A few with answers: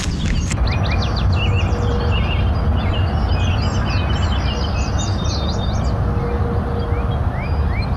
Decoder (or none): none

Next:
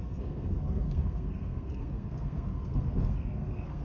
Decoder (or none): codec, SNAC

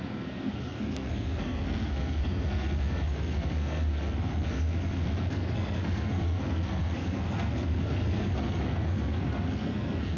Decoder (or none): codec, SNAC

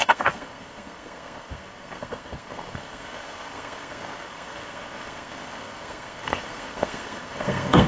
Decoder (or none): codec, SNAC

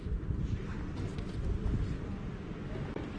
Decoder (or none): none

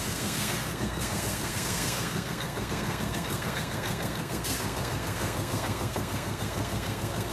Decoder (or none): codec, SNAC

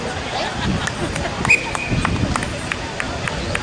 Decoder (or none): none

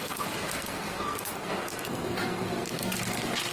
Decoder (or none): codec, SNAC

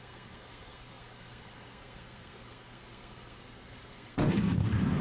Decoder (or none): codec, SNAC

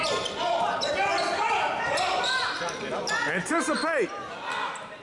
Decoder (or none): none